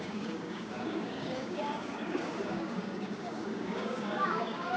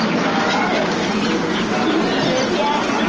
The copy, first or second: first